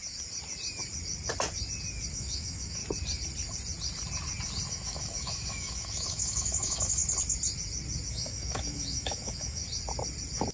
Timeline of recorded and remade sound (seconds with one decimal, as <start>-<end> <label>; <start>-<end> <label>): 0.0-2.1 recorded; 2.1-2.8 remade; 2.8-4.7 recorded; 4.7-7.0 remade; 7.0-8.1 recorded; 8.1-9.6 remade; 9.6-10.5 recorded